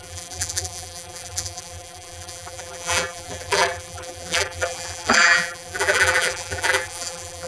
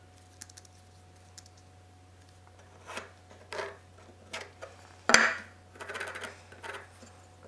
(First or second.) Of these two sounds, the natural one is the second